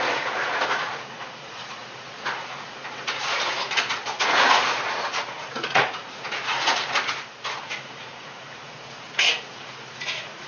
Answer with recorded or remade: remade